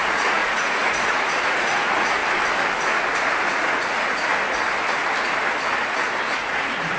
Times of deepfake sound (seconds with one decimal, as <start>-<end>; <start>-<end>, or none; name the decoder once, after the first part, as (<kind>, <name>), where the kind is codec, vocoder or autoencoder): 0.0-2.2 (vocoder, Vocos); 3.5-4.3; 6.3-7.0